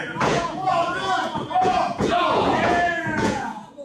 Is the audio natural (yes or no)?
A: no